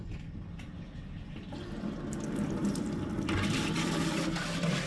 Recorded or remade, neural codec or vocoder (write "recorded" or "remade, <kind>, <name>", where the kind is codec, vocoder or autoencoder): recorded